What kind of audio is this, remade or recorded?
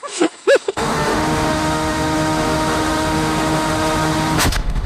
remade